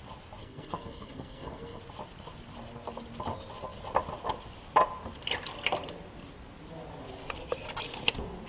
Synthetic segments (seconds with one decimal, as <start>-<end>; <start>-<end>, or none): 0.4-1.8